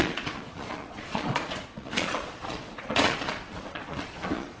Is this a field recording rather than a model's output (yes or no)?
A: no